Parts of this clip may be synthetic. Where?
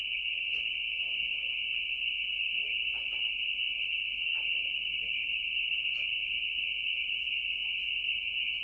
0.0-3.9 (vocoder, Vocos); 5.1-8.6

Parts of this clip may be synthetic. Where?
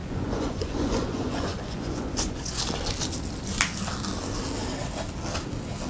0.0-2.6 (vocoder, Vocos)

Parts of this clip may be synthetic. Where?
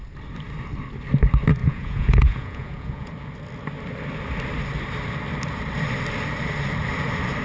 1.6-3.1 (vocoder, Vocos)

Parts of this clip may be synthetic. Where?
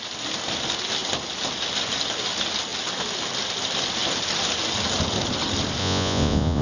5.8-6.6 (vocoder, Vocos)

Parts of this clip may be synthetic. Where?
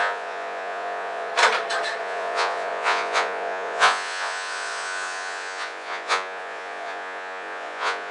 0.0-1.3 (vocoder, Vocos); 2.0-8.1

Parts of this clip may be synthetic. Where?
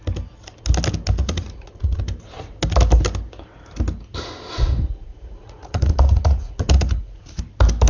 1.2-2.0 (vocoder, Vocos); 5.1-7.4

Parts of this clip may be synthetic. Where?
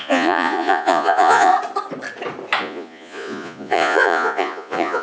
0.0-1.5 (vocoder, Vocos); 2.6-5.0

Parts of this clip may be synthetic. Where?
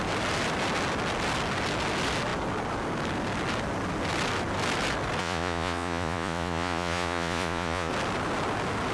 5.2-7.9 (vocoder, Vocos)